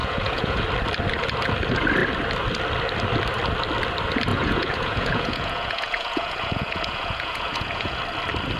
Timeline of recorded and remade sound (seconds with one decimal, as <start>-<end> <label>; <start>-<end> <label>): 0.0-0.6 remade; 0.6-4.3 recorded; 4.3-8.0 remade; 8.0-8.6 recorded